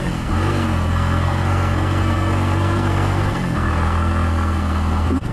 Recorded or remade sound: remade